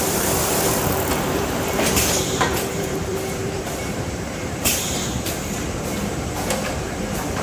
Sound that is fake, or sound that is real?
fake